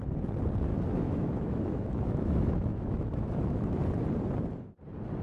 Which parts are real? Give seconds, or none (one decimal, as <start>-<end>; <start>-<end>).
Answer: 0.0-0.7; 3.8-5.2